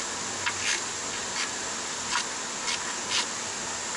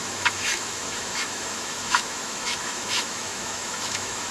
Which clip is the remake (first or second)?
second